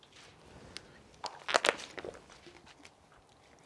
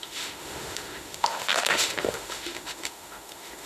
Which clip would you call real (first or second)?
first